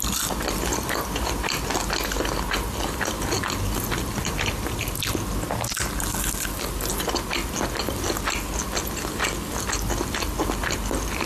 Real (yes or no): yes